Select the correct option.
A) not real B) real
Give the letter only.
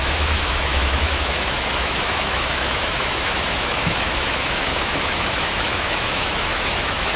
A